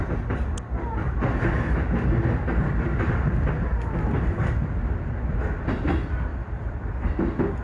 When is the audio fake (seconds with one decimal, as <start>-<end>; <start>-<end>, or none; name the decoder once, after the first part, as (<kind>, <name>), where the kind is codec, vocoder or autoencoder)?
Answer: none